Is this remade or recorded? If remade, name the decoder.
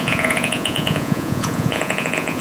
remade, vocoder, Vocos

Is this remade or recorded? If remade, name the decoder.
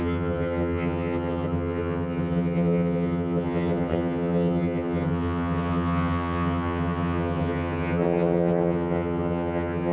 remade, vocoder, HiFi-GAN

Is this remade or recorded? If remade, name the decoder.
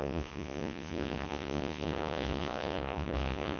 remade, vocoder, Vocos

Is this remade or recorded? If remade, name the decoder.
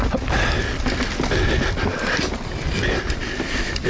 recorded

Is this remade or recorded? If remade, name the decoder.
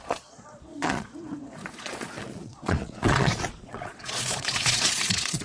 remade, vocoder, Vocos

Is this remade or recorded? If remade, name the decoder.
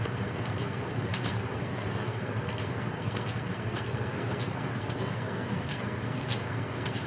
remade, codec, SNAC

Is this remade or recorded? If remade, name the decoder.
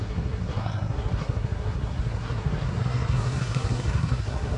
remade, codec, SNAC